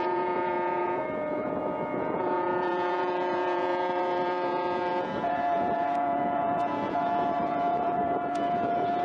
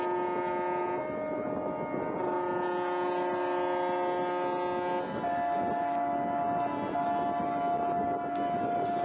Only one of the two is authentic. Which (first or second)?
second